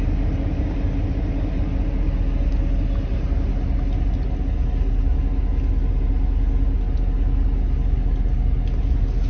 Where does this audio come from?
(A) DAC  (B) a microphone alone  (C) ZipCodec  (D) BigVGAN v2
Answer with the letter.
B